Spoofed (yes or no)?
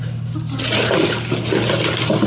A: no